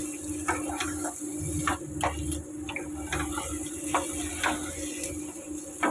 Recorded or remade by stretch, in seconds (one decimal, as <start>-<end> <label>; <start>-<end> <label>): 0.0-5.9 recorded